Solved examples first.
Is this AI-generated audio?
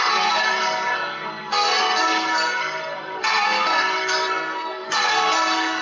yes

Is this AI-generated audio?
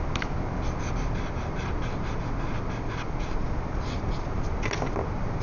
no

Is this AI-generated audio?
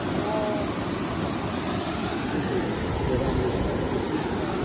no